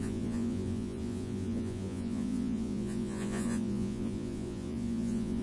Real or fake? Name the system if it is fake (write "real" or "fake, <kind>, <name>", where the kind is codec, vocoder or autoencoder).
fake, vocoder, Vocos